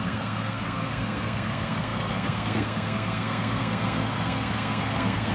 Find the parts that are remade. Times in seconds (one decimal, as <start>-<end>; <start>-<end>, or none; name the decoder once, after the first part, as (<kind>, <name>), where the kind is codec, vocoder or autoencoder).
0.0-5.3 (codec, SNAC)